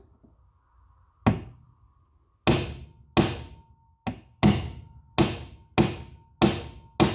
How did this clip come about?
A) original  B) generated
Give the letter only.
A